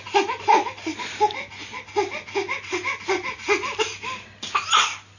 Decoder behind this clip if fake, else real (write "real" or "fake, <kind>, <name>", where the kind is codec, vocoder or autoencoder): real